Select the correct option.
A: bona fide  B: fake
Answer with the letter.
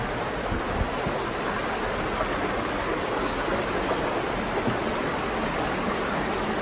A